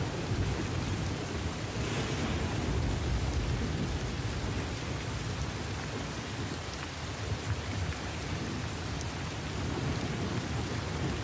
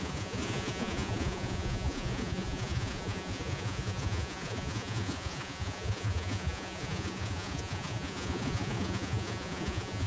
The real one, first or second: first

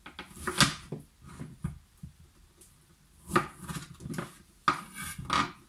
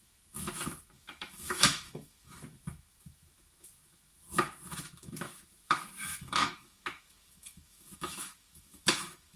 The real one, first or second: first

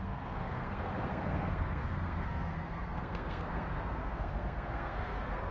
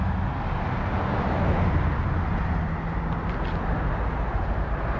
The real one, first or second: second